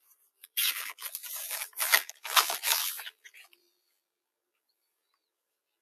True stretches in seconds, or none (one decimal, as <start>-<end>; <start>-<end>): none